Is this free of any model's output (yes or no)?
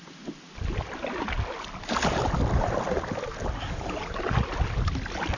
yes